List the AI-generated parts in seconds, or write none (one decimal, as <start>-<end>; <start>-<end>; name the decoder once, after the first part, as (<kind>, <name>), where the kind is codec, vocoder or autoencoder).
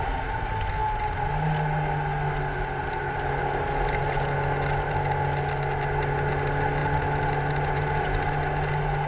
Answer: none